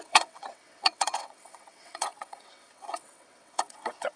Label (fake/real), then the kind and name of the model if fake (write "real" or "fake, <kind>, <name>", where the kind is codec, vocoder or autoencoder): fake, vocoder, WaveNeXt